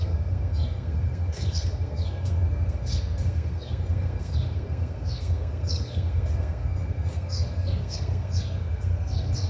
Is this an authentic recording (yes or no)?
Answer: no